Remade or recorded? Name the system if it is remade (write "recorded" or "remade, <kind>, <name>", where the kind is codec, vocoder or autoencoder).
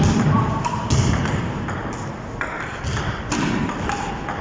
recorded